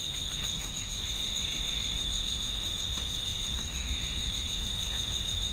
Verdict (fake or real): fake